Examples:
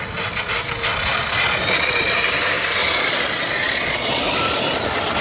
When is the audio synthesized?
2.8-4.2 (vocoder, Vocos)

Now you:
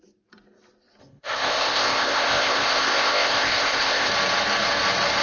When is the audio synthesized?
1.0-4.1 (codec, ZipCodec)

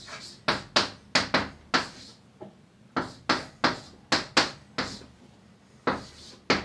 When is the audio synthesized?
none

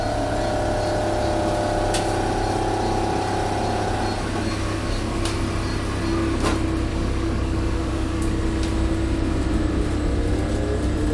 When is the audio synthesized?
4.7-5.2 (codec, DAC); 6.9-8.3

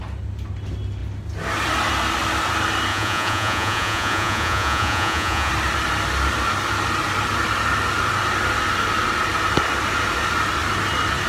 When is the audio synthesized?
2.9-5.5 (vocoder, Vocos)

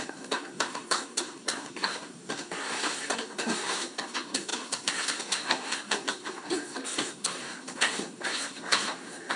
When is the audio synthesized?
0.0-9.4 (codec, SNAC)